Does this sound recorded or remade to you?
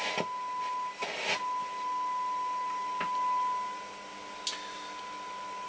recorded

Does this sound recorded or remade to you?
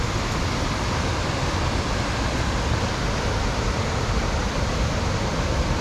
remade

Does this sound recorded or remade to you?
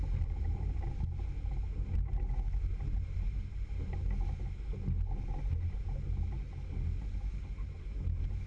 recorded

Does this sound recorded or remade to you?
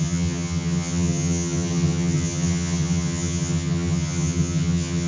remade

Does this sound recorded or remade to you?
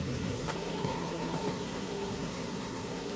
remade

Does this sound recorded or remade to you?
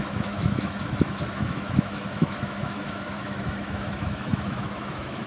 remade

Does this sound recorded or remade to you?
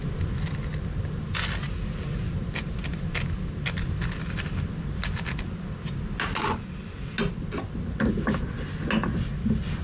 recorded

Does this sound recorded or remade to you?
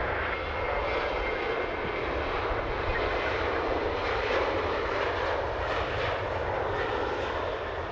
recorded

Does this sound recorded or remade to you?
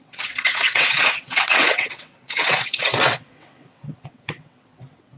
remade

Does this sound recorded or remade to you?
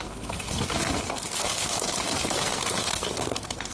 remade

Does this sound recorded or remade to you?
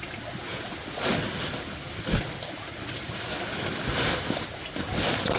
recorded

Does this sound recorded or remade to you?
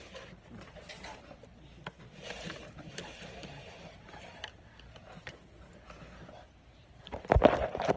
recorded